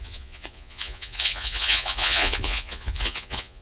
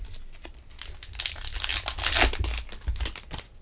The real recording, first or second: second